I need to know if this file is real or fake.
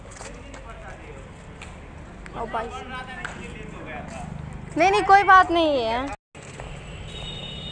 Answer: real